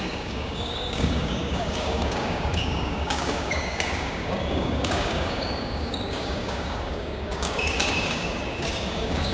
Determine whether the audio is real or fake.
fake